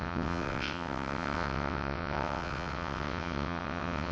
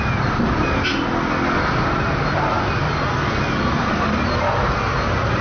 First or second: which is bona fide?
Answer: second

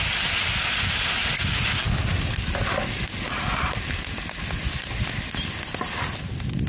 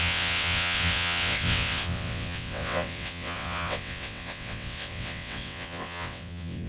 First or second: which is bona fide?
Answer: first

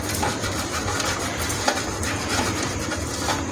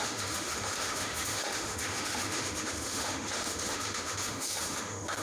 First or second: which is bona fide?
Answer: first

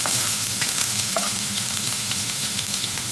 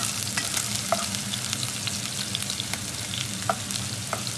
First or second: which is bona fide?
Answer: second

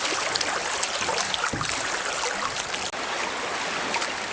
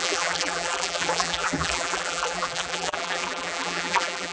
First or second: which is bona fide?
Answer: first